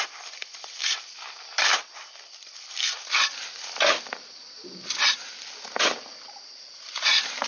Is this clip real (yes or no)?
no